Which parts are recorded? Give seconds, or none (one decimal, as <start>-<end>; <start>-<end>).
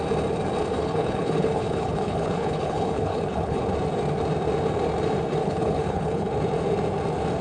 0.0-0.8; 3.6-5.4; 6.3-7.4